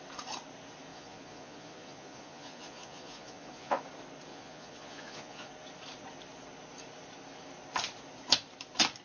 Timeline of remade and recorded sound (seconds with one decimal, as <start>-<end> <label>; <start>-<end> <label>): 0.0-0.9 recorded; 0.9-3.8 remade; 3.8-4.3 recorded; 4.3-5.5 remade; 5.5-9.0 recorded